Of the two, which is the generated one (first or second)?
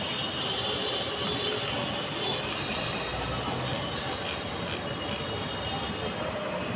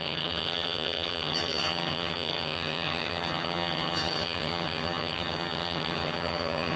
second